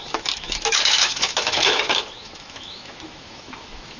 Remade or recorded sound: remade